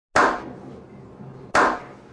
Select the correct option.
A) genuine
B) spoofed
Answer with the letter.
A